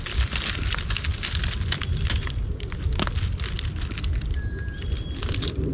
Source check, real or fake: real